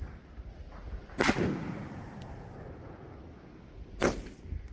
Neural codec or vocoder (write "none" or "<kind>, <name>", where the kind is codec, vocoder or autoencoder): none